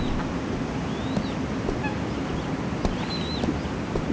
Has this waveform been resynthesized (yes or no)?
no